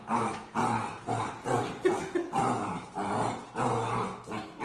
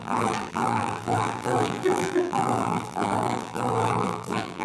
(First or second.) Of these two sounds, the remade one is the second